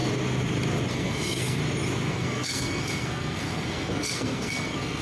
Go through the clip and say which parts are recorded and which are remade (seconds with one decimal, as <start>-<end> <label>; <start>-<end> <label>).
0.0-0.9 recorded; 0.9-1.6 remade; 1.6-2.1 recorded; 2.1-5.0 remade